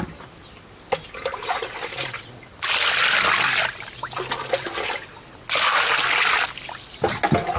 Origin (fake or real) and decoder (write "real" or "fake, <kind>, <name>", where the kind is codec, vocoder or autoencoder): real